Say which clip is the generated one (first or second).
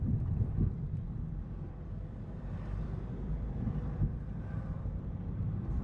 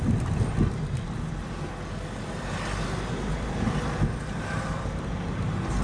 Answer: first